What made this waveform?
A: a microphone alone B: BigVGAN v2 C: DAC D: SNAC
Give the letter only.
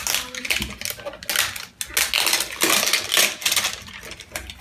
A